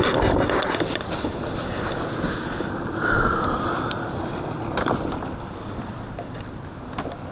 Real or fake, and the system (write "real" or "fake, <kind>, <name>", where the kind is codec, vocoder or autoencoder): real